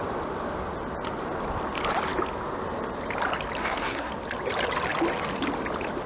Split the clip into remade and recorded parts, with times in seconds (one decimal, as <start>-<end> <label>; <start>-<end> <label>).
0.0-3.6 recorded; 3.6-4.1 remade; 4.1-6.1 recorded